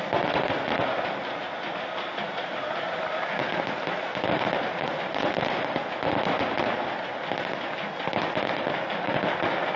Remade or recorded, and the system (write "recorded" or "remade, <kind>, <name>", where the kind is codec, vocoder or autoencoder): recorded